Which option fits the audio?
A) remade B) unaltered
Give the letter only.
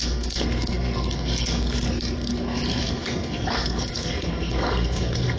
A